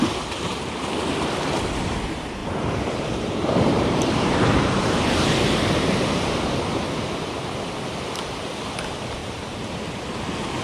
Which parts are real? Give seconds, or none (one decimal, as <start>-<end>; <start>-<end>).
0.0-2.4; 6.4-9.2; 9.8-10.6